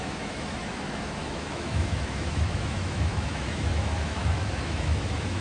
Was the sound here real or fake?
fake